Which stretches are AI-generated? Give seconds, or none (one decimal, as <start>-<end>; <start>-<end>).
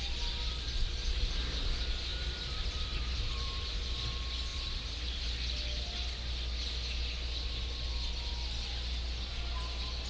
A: 2.1-3.8; 4.5-5.3